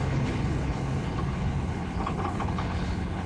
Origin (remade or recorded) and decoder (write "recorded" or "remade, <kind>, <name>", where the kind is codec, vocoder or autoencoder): remade, codec, HILCodec